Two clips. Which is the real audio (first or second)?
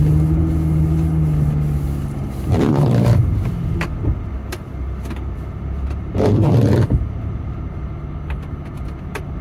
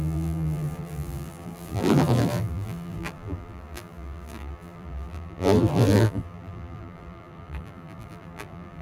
first